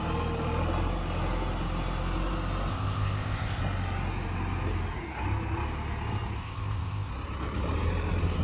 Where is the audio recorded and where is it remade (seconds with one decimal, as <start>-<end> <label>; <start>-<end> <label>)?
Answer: 0.0-2.7 recorded; 2.7-3.6 remade; 3.6-6.4 recorded; 6.4-7.1 remade; 7.1-8.4 recorded